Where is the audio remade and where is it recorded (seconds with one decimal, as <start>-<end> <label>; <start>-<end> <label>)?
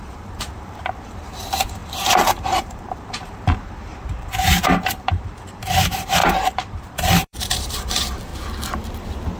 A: 0.0-8.3 remade; 8.3-9.4 recorded